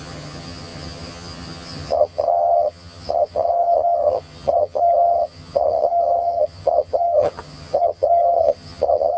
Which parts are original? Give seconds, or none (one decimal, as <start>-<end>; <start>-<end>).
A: none